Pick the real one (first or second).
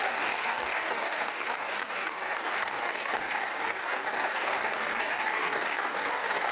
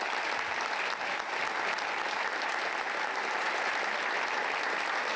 second